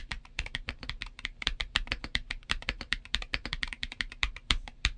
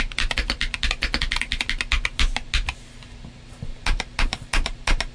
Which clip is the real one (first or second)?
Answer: second